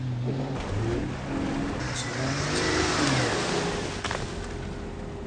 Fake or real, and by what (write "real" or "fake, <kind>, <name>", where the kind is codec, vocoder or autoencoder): real